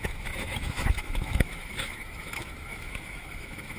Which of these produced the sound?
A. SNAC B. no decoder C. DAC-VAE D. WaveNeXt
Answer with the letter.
C